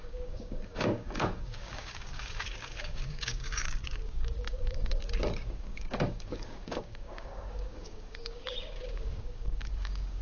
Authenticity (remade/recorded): remade